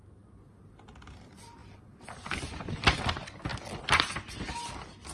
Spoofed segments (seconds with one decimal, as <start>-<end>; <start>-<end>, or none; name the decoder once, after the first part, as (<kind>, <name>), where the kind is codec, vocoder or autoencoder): 1.6-3.0 (vocoder, BigVGAN v2); 3.5-4.5